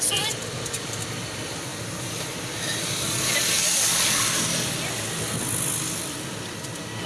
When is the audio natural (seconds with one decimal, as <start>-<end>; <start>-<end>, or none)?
1.7-6.0